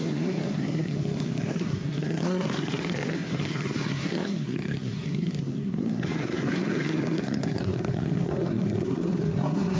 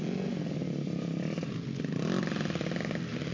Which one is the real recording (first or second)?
second